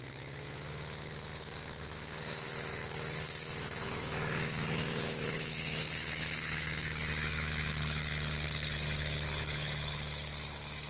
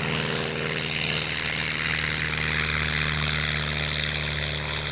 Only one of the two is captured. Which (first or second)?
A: second